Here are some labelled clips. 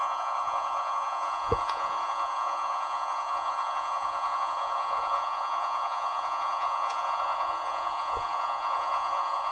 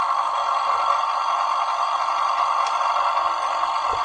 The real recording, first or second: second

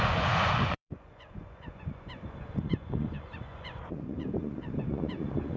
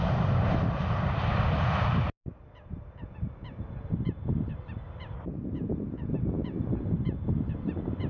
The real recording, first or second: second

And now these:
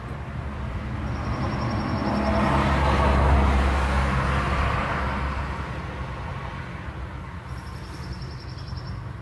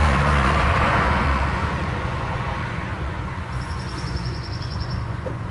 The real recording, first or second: first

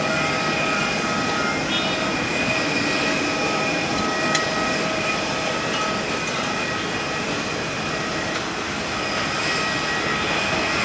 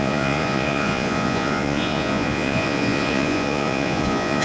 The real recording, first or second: first